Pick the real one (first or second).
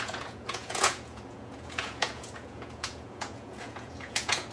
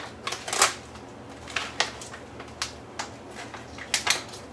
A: second